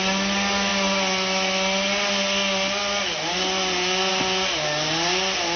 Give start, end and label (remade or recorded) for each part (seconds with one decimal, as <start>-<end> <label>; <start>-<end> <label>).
0.0-5.6 recorded